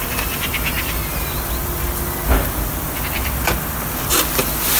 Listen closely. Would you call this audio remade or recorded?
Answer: recorded